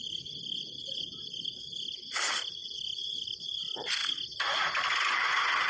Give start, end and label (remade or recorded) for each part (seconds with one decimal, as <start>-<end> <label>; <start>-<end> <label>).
0.0-2.6 recorded; 2.6-3.6 remade; 3.6-5.7 recorded